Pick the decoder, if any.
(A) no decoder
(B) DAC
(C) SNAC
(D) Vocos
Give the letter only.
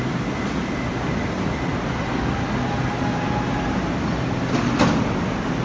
A